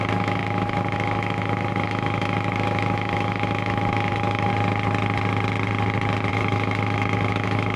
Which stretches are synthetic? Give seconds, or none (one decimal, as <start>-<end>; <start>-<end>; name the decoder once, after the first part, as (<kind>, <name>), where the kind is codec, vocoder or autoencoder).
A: 0.0-4.5 (autoencoder, DAC-VAE); 6.3-7.8